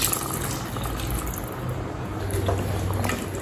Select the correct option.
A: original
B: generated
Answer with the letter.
A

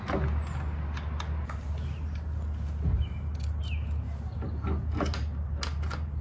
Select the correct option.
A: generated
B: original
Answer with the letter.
B